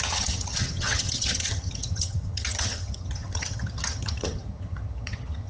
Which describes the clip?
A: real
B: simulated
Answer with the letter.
B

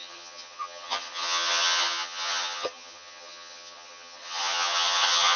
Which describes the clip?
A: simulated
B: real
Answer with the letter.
A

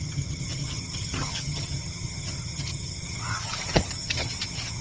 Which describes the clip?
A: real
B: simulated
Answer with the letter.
B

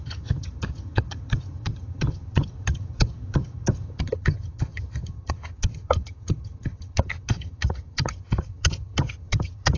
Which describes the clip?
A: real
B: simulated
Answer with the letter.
B